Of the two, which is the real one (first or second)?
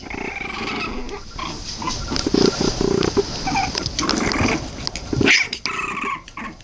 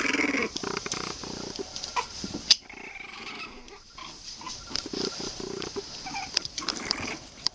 first